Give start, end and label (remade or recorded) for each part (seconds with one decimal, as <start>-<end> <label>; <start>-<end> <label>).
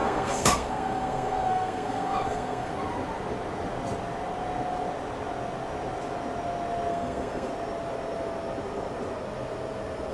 0.0-2.7 remade; 2.7-6.9 recorded; 6.9-7.5 remade; 7.5-10.1 recorded